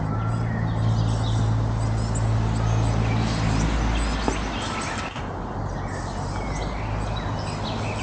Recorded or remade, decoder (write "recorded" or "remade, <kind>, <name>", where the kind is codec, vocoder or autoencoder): recorded